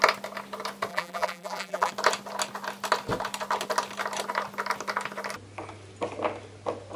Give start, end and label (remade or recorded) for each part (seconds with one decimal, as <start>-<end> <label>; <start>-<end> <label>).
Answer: 0.0-0.9 recorded; 0.9-1.9 remade; 1.9-7.0 recorded